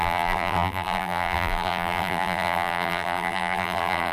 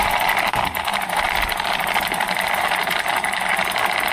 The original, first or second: second